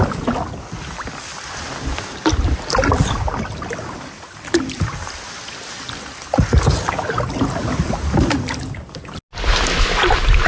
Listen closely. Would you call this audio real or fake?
real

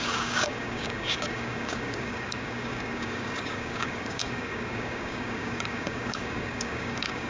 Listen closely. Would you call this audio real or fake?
fake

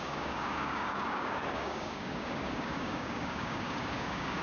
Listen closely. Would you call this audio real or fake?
fake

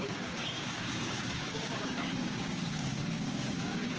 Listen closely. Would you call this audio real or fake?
fake